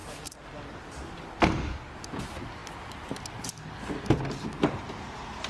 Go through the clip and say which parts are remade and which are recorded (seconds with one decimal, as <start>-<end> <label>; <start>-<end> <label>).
0.0-5.5 recorded